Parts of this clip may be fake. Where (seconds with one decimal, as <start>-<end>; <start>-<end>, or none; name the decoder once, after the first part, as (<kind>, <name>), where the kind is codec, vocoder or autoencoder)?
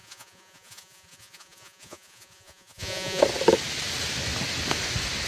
0.0-3.2 (vocoder, Vocos)